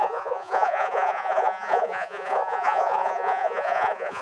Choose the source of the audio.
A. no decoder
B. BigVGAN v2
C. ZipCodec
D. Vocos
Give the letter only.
D